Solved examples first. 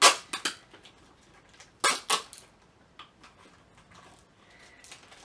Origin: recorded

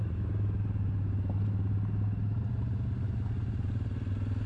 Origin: recorded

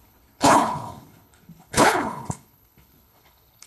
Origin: remade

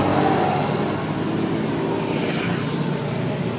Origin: recorded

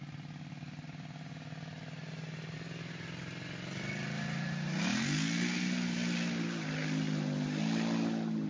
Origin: recorded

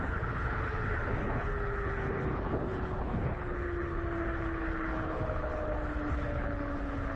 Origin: remade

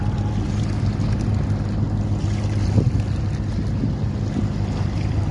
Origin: recorded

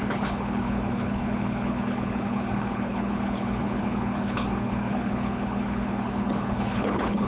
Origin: remade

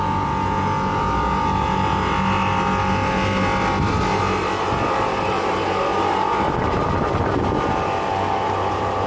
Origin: recorded